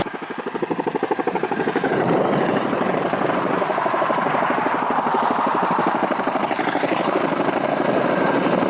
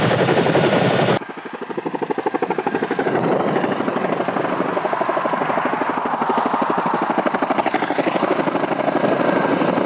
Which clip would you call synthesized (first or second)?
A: first